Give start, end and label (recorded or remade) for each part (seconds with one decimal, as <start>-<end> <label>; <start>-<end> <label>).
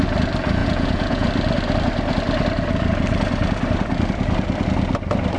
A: 0.0-0.6 recorded; 0.6-1.3 remade; 1.3-5.4 recorded